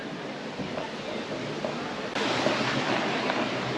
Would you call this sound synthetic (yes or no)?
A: no